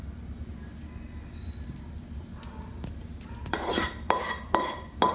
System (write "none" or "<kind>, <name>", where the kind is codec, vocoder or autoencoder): none